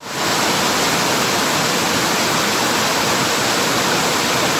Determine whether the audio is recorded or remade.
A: recorded